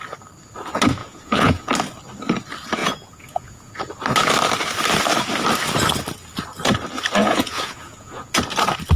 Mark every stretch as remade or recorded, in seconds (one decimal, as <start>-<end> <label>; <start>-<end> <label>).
0.0-1.0 recorded; 1.0-1.7 remade; 1.7-2.8 recorded; 2.8-3.7 remade; 3.7-7.2 recorded; 7.2-8.4 remade; 8.4-9.0 recorded